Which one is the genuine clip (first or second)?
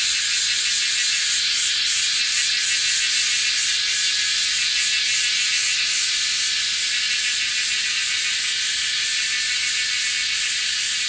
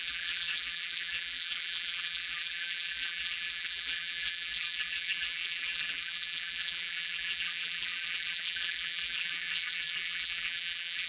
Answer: first